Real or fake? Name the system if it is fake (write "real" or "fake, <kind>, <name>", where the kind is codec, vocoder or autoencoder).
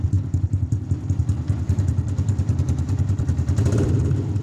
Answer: fake, vocoder, BigVGAN v2